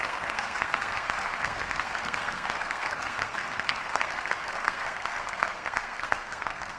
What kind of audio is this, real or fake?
fake